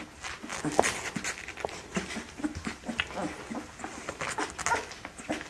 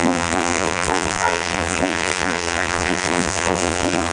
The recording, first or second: first